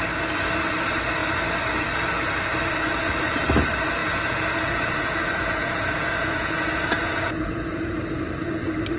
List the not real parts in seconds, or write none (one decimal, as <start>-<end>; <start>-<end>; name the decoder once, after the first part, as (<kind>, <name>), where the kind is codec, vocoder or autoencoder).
4.0-7.9 (vocoder, Vocos)